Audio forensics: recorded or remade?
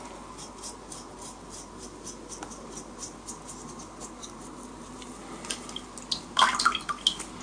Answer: recorded